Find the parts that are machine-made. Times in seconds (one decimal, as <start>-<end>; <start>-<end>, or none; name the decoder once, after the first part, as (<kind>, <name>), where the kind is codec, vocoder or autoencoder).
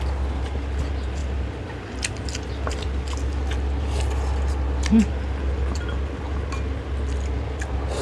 none